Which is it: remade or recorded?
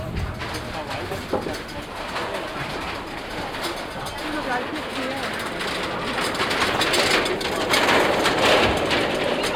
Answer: recorded